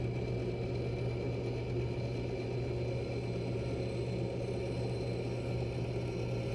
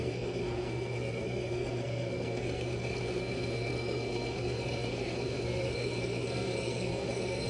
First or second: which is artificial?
second